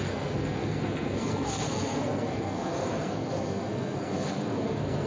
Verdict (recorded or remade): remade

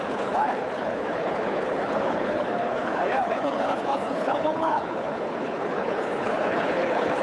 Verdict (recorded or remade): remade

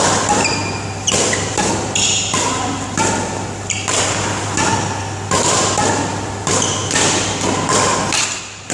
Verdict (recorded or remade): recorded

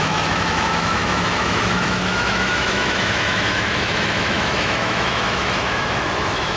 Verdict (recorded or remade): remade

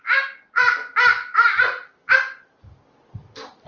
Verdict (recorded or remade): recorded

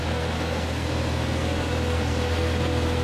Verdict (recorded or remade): remade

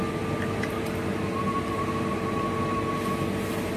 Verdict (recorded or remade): recorded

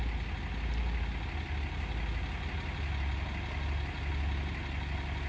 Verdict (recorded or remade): recorded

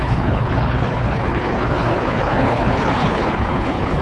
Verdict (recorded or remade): remade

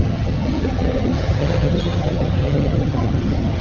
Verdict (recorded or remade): remade